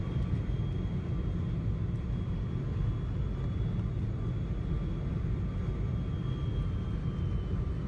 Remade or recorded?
recorded